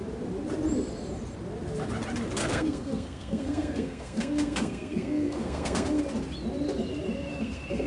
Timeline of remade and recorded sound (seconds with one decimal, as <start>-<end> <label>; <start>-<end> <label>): 0.0-2.4 recorded; 2.4-6.0 remade; 6.0-7.3 recorded; 7.3-7.9 remade